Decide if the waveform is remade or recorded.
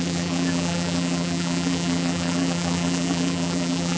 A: remade